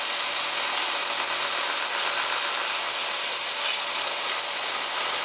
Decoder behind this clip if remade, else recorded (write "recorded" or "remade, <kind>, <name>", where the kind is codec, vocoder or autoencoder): recorded